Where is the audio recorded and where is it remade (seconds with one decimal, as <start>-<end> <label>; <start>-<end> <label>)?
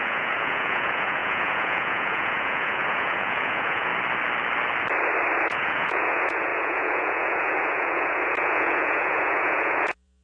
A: 0.0-3.9 remade; 3.9-5.4 recorded; 5.4-10.2 remade